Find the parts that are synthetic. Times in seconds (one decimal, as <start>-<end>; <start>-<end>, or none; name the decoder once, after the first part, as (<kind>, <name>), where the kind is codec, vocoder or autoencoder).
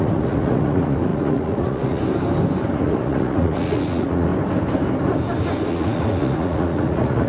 0.0-2.0 (vocoder, Vocos); 2.7-4.3; 5.7-7.3